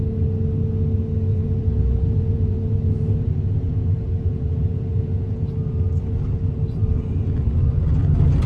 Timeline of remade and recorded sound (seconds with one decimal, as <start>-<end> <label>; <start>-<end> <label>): 0.0-1.3 recorded; 1.3-5.5 remade; 5.5-8.5 recorded